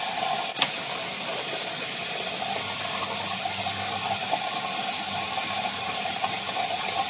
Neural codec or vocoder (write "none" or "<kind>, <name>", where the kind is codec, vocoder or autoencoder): none